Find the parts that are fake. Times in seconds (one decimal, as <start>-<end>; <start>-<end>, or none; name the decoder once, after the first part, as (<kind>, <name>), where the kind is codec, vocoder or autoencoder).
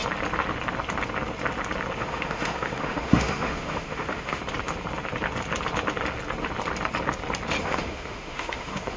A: 2.0-4.4 (autoencoder, DAC-VAE); 7.6-9.0